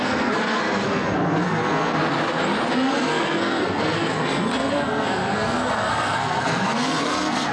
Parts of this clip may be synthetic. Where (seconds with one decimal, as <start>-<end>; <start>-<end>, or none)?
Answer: 0.0-2.0; 2.7-7.5